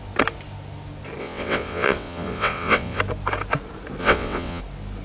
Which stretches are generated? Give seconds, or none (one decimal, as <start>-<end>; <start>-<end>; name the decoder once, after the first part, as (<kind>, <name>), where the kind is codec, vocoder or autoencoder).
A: 1.2-3.0 (vocoder, WaveNeXt); 4.0-4.6